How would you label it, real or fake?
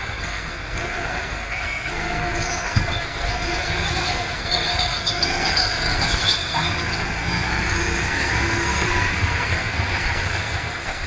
fake